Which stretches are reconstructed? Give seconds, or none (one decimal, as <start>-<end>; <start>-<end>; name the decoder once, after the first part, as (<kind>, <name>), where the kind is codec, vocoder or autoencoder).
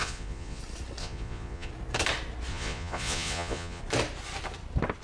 0.0-0.6 (vocoder, Vocos); 1.0-1.7; 2.5-3.8